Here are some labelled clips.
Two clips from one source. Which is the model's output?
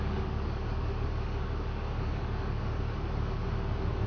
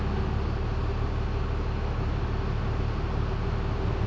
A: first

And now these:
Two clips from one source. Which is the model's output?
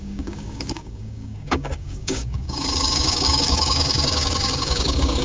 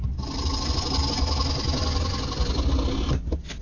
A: first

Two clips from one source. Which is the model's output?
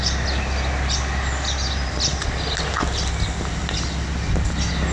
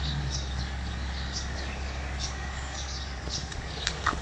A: second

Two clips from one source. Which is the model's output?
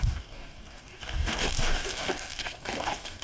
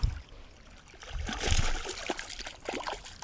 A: first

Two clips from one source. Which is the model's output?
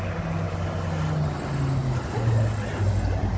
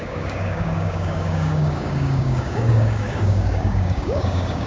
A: second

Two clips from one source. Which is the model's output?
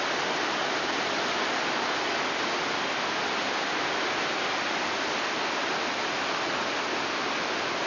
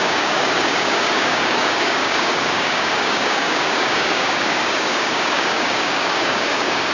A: second